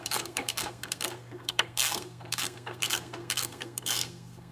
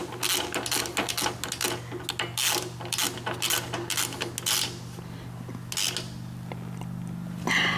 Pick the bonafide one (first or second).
second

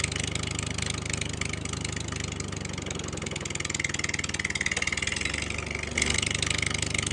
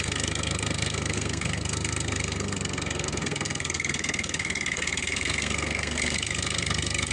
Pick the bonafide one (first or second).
first